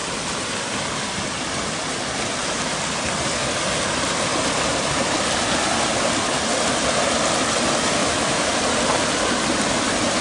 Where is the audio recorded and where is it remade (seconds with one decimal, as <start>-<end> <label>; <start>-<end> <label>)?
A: 0.0-8.0 recorded; 8.0-8.5 remade; 8.5-10.2 recorded